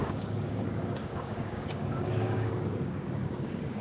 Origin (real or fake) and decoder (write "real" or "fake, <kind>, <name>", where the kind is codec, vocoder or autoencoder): fake, codec, DAC